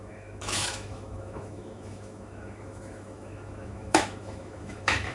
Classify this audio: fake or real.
fake